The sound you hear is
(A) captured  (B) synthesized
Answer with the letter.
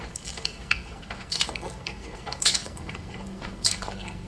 B